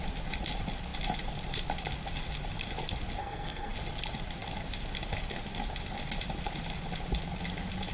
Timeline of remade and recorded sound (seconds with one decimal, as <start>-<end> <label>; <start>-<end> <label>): 0.0-3.2 recorded; 3.2-3.7 remade; 3.7-7.9 recorded